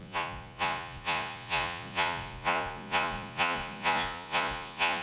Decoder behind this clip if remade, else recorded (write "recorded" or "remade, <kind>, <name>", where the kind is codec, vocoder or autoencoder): remade, vocoder, Vocos